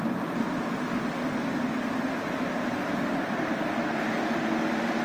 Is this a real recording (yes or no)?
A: yes